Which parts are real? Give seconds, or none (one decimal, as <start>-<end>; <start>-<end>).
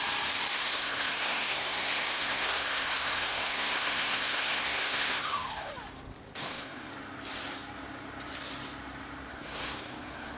0.0-0.5; 5.7-6.4; 6.9-9.3